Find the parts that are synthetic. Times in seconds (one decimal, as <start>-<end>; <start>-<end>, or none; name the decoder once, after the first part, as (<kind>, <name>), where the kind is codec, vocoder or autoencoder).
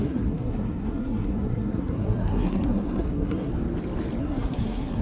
0.0-3.5 (codec, SNAC); 4.2-5.0